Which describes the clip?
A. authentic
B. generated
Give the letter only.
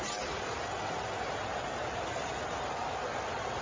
A